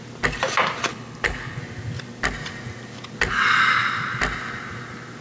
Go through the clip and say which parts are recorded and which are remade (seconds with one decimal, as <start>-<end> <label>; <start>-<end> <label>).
0.0-0.9 recorded; 0.9-1.6 remade; 1.6-5.2 recorded